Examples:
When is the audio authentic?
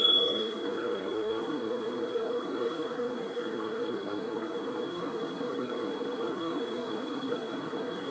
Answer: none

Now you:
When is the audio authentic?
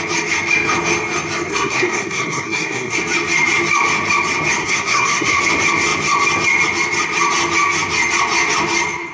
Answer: 0.0-1.5; 3.0-4.6; 5.4-9.1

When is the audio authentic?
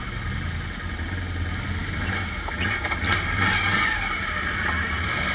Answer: 0.0-5.3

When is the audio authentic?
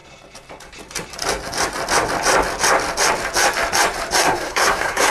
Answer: 0.0-4.2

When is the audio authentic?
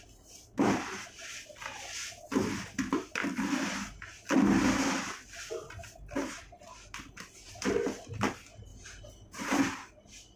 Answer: 0.0-10.4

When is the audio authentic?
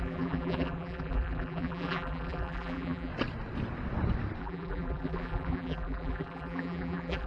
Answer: 3.1-4.4